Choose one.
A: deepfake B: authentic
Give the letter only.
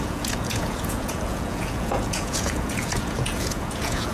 A